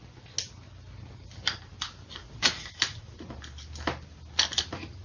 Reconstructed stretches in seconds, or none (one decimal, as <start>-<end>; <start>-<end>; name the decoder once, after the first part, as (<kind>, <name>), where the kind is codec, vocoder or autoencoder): none